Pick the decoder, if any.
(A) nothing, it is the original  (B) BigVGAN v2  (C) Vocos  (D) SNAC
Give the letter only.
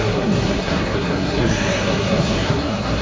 D